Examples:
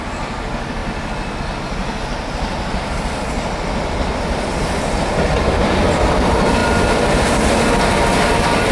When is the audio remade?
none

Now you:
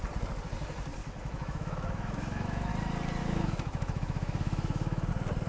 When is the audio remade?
1.0-2.7 (autoencoder, DAC-VAE); 3.2-5.1

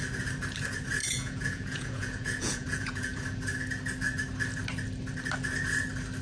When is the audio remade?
1.0-3.2 (vocoder, Vocos)

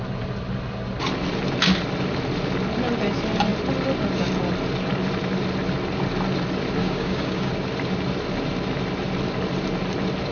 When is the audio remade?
6.8-7.5 (codec, DAC)

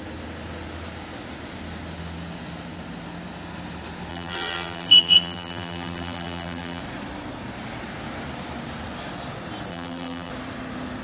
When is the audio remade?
4.1-6.8 (vocoder, BigVGAN v2); 9.7-10.3

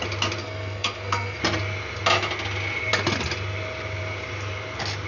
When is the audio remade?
0.4-1.4 (codec, SNAC)

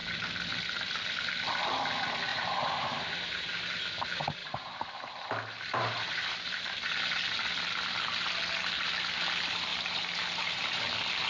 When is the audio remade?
2.3-3.0 (vocoder, BigVGAN v2); 4.4-6.9; 9.7-10.8

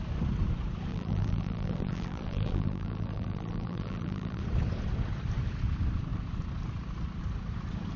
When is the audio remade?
0.9-4.4 (vocoder, BigVGAN v2)